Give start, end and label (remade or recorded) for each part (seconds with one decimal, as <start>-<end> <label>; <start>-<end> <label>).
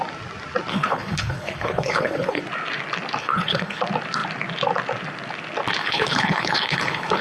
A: 0.0-0.7 recorded; 0.7-2.4 remade; 2.4-3.2 recorded; 3.2-3.8 remade; 3.8-5.8 recorded; 5.8-7.2 remade